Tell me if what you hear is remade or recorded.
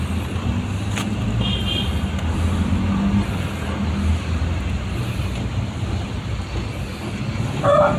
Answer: recorded